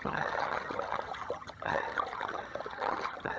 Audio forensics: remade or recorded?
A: remade